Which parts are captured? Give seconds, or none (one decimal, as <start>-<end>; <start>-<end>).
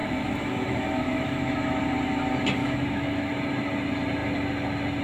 1.8-2.6; 3.3-5.0